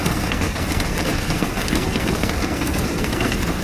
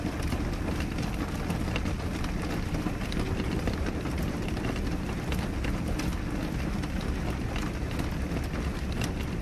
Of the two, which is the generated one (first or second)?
first